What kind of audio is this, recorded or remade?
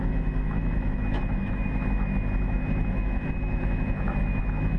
remade